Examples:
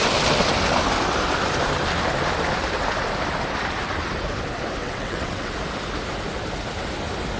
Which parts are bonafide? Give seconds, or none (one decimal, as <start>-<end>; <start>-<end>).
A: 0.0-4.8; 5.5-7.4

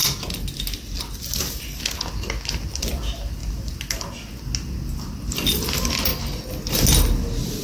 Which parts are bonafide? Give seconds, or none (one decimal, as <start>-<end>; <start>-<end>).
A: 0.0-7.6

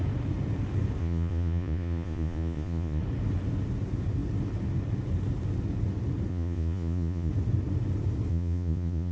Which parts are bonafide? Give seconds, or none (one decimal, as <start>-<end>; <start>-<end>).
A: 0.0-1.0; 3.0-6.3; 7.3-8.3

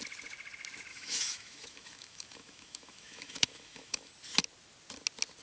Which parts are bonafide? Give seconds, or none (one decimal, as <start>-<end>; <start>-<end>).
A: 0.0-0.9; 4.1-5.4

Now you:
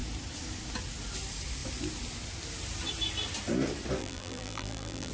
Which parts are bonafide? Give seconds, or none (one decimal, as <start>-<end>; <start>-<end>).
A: 0.0-4.0

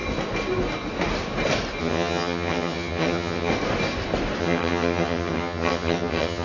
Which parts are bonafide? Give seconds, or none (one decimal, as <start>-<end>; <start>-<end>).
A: 0.0-1.8; 3.5-4.4